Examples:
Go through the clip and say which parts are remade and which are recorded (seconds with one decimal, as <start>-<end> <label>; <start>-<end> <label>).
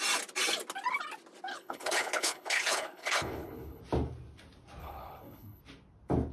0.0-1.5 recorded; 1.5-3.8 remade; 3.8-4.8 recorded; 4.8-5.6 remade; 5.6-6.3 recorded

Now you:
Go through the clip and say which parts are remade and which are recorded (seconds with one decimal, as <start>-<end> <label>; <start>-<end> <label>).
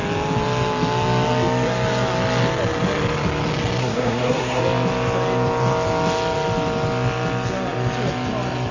0.0-3.8 recorded; 3.8-4.6 remade; 4.6-8.7 recorded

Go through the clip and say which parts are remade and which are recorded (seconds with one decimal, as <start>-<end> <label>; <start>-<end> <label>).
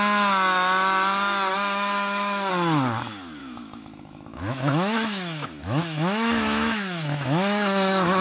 0.0-1.5 recorded; 1.5-2.5 remade; 2.5-3.4 recorded; 3.4-8.2 remade